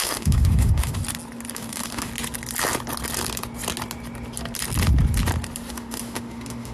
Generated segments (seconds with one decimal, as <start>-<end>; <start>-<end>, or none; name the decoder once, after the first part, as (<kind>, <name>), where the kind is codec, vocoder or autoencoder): 0.0-1.0 (autoencoder, DAC-VAE); 1.5-2.1; 5.7-6.7